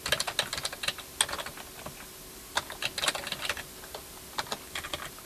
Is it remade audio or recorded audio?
recorded